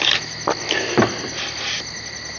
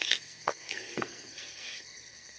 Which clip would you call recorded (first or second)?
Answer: first